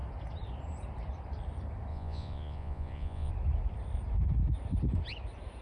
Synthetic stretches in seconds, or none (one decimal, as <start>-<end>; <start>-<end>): 1.9-3.3